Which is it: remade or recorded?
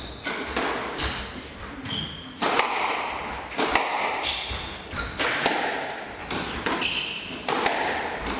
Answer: recorded